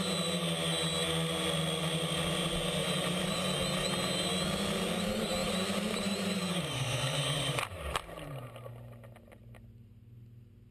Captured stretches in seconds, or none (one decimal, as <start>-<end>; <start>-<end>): 0.0-2.8; 3.4-5.4; 8.7-10.7